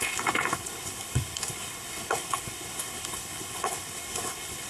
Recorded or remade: remade